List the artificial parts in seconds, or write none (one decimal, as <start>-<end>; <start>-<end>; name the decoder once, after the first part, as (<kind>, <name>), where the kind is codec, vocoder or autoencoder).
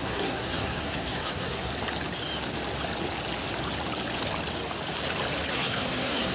0.0-1.7 (codec, SNAC); 5.5-6.3